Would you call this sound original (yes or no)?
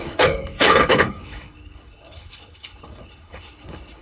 no